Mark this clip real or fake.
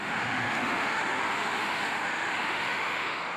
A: fake